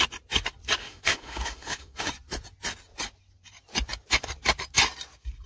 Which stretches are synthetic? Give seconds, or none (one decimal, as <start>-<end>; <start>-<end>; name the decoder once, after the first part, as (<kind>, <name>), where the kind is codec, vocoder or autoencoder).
0.8-2.1 (autoencoder, DAC-VAE)

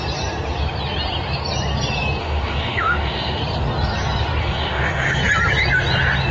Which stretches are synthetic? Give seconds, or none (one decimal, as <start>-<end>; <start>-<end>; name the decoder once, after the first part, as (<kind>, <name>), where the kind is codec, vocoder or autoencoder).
2.2-3.4 (autoencoder, DAC-VAE); 4.4-5.2

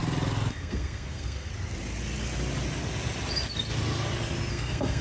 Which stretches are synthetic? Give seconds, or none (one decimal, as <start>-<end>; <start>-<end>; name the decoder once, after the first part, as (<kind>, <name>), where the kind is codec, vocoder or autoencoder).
0.5-1.5 (codec, SNAC); 4.5-5.0